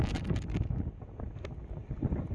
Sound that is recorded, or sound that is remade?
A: recorded